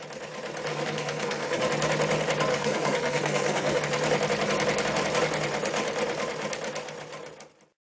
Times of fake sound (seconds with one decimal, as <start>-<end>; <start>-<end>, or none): 0.7-1.6; 2.5-3.8